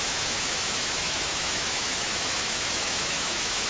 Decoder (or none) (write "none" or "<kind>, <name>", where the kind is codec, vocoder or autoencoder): autoencoder, DAC-VAE